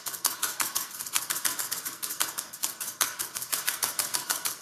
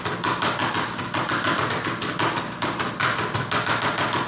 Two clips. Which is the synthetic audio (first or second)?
first